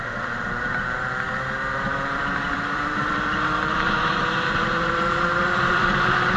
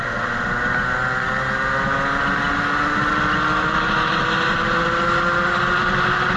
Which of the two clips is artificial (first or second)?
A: first